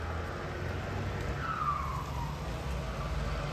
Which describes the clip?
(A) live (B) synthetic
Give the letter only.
A